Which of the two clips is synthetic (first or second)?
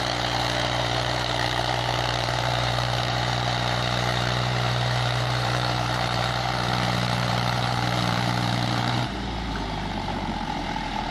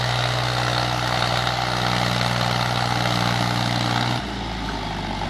first